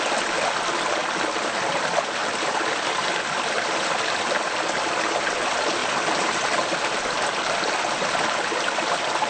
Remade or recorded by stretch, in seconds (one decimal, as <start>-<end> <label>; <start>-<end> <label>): 0.0-1.0 recorded; 1.0-1.5 remade; 1.5-2.2 recorded; 2.2-4.9 remade; 4.9-5.8 recorded; 5.8-6.3 remade; 6.3-9.3 recorded